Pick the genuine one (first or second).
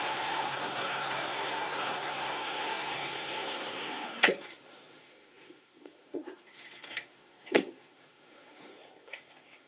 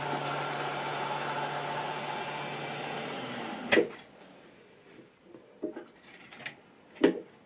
second